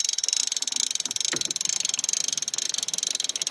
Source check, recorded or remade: recorded